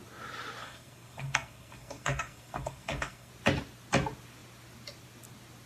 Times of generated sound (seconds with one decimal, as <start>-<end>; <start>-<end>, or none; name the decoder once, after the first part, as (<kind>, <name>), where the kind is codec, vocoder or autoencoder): 0.6-3.3 (codec, SNAC)